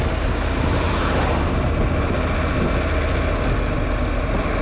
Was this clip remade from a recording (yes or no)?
no